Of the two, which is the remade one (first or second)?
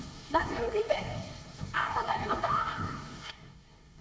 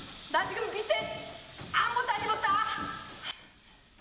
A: first